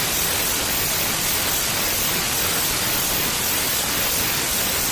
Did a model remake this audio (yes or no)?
no